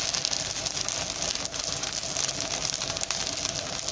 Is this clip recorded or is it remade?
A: recorded